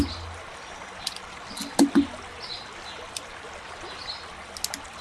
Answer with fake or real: real